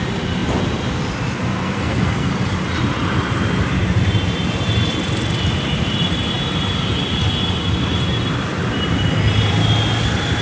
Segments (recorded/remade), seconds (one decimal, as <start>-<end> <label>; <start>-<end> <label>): 0.0-1.5 recorded; 1.5-2.3 remade; 2.3-10.4 recorded